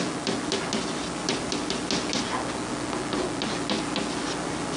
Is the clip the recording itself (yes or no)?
yes